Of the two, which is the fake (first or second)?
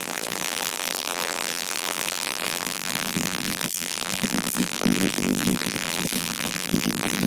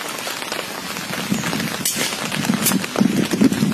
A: first